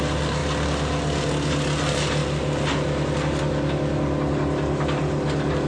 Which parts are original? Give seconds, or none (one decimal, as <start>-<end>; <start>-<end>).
0.0-5.7